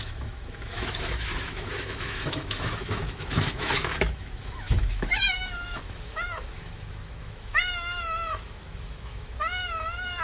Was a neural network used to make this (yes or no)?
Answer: yes